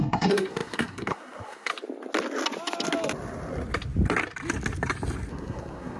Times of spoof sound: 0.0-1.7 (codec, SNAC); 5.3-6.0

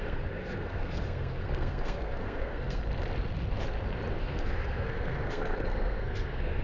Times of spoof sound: 0.0-2.8 (codec, SNAC); 4.2-6.6